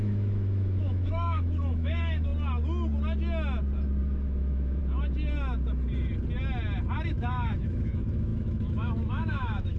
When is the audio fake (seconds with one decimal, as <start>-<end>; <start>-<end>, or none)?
0.0-2.3; 4.0-4.8; 7.1-9.8